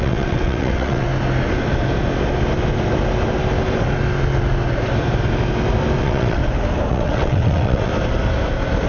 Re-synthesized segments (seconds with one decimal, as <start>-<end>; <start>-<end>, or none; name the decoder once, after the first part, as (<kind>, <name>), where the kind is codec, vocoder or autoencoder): 0.0-1.1 (vocoder, WaveNeXt); 6.0-6.4; 6.9-7.9